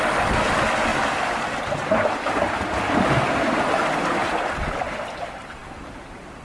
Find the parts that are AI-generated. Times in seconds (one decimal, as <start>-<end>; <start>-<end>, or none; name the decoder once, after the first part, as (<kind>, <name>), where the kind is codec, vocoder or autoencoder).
none